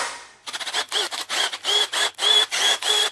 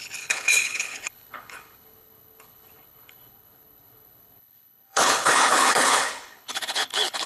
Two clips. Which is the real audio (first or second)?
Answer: first